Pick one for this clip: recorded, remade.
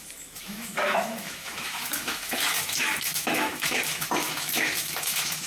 remade